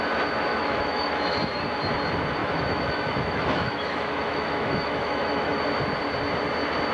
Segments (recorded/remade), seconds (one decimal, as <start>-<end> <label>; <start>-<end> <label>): 0.0-0.5 recorded; 0.5-1.6 remade; 1.6-2.4 recorded; 2.4-5.6 remade; 5.6-6.9 recorded